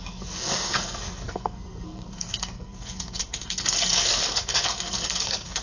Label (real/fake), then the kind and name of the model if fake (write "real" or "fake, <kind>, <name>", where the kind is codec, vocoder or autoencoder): fake, codec, SNAC